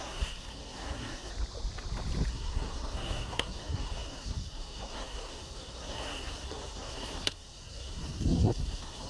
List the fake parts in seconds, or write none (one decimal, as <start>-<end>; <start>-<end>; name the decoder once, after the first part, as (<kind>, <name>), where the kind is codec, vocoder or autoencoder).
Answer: 0.0-1.3 (codec, SNAC); 2.3-9.1